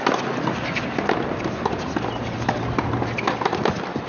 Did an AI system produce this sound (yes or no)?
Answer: no